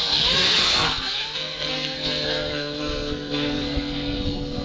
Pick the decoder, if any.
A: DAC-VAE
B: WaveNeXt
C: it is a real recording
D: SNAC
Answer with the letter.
D